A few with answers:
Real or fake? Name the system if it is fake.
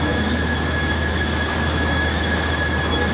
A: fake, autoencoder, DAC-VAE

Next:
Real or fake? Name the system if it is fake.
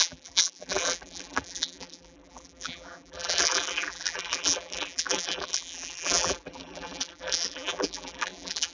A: fake, vocoder, BigVGAN v2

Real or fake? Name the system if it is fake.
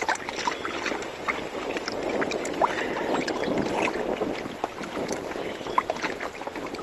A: real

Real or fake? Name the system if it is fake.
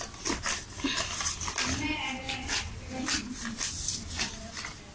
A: real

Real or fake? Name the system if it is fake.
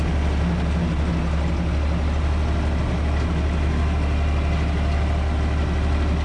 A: real